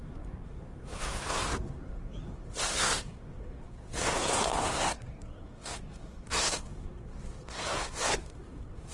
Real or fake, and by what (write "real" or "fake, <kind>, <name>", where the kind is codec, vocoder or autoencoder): fake, codec, SNAC